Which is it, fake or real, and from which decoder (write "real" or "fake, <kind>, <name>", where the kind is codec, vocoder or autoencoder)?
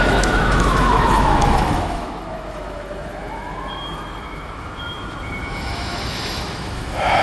fake, autoencoder, DAC-VAE